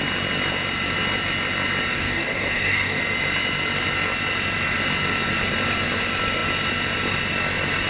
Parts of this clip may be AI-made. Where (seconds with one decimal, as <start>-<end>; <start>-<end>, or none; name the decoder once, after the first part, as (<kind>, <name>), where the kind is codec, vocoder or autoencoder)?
1.9-3.0 (codec, DAC)